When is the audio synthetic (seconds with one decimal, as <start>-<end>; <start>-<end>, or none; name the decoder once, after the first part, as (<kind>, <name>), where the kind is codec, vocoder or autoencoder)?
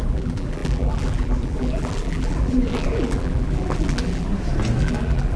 0.0-4.3 (vocoder, BigVGAN v2); 4.8-5.4